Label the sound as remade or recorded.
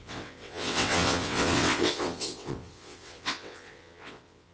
remade